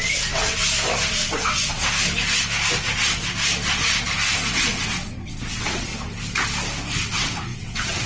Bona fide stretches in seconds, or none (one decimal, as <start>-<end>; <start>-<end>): 0.6-1.1; 1.8-4.5; 5.9-7.1

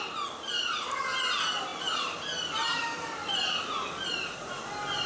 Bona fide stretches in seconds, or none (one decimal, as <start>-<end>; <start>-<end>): 0.0-5.1

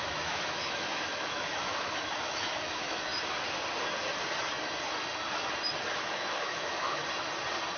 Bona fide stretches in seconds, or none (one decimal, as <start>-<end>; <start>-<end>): 3.1-6.0; 7.0-7.8

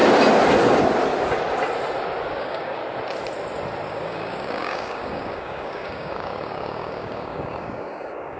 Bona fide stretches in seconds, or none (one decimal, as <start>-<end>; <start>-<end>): 0.0-2.4; 2.8-3.9

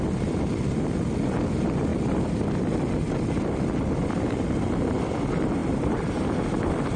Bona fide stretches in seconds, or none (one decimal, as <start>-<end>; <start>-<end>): 0.0-5.6; 6.2-7.0

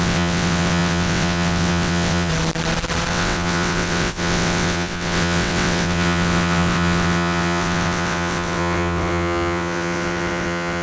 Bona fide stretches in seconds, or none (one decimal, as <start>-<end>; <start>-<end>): 2.3-3.1

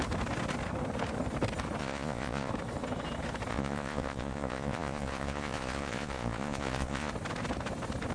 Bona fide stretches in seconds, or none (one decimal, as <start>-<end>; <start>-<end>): 0.0-1.8; 2.5-3.5; 7.1-8.1